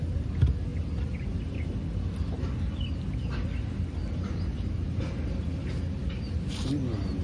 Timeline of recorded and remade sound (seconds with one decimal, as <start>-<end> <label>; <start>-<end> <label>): 0.0-7.2 recorded